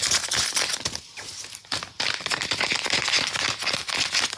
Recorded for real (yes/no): yes